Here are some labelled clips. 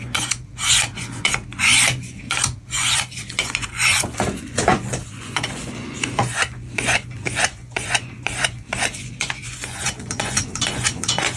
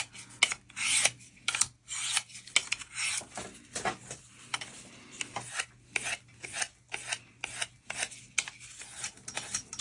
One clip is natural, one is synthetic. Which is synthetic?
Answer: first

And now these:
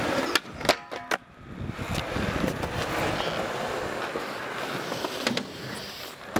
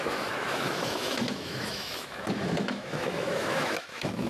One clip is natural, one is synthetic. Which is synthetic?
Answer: second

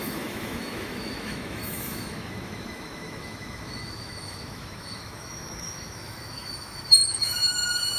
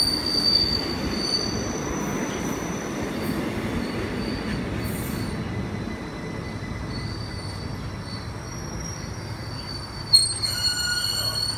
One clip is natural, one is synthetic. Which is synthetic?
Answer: first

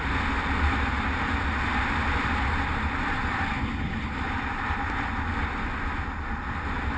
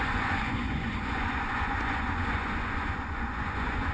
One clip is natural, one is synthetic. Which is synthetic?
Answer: second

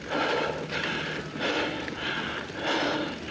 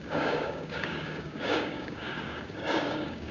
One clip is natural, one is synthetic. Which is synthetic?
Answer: second